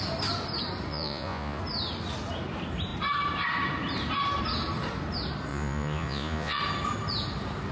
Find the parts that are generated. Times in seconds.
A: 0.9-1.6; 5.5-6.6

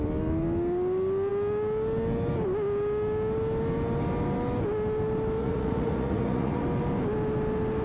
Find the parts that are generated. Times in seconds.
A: 5.4-6.6

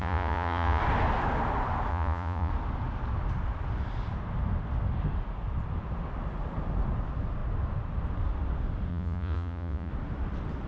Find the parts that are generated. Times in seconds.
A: 0.0-0.8; 1.9-2.5; 8.9-9.9

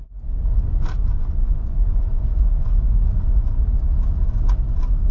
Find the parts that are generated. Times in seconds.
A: 0.5-3.6

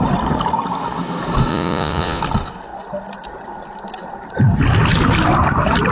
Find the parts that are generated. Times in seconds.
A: 1.5-2.2